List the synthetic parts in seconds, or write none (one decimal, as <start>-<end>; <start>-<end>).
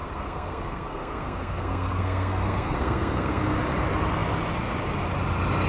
0.0-3.4